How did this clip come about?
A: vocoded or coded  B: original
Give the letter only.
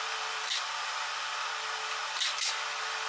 A